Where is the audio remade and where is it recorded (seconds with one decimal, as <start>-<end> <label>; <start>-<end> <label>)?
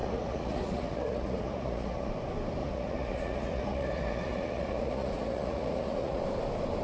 0.0-2.1 remade; 2.1-2.6 recorded; 2.6-6.2 remade; 6.2-6.8 recorded